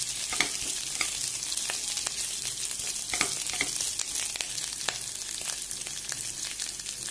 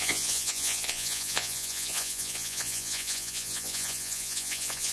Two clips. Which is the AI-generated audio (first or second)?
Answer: second